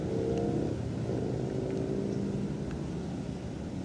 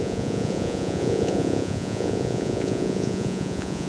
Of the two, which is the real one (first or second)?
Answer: first